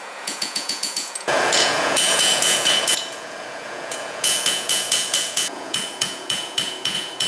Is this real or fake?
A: fake